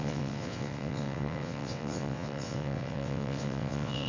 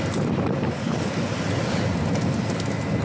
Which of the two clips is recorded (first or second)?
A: second